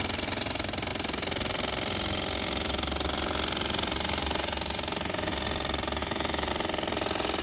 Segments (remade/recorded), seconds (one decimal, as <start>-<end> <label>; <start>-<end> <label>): 0.0-6.0 recorded; 6.0-6.5 remade; 6.5-7.4 recorded